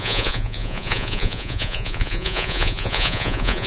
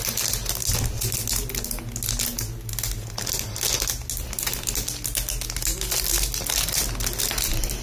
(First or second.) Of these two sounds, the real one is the second